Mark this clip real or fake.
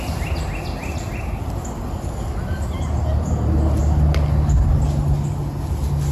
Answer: real